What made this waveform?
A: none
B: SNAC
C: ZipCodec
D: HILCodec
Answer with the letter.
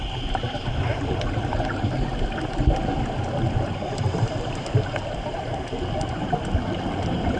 A